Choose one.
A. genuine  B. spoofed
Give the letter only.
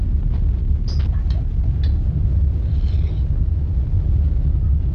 A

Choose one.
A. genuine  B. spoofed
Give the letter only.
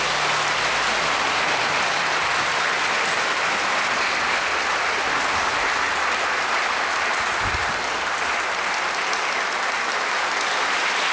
A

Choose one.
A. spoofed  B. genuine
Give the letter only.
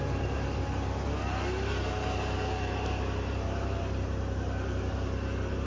A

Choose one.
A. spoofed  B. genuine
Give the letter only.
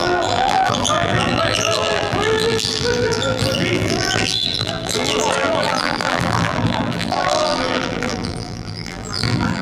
A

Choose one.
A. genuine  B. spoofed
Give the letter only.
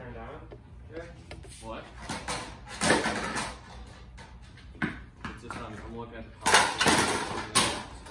A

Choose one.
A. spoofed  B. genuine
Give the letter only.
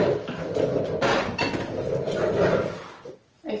B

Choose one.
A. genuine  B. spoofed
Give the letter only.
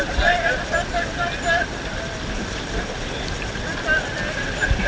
A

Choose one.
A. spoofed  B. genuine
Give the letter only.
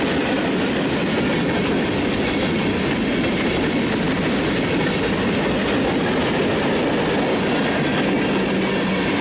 B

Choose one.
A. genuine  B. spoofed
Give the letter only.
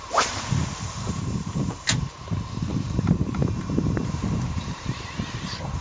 B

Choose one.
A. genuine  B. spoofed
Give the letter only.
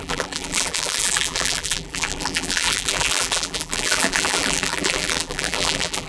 B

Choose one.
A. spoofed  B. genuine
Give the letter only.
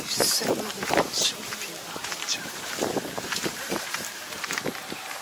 A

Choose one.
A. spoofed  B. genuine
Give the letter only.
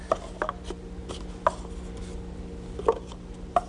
B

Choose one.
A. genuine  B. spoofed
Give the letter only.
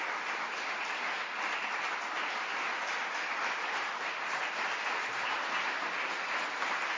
A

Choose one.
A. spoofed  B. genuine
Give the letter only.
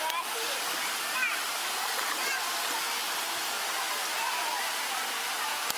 B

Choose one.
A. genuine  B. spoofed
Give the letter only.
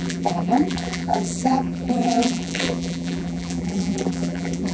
B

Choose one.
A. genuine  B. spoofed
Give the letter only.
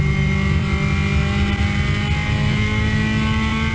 A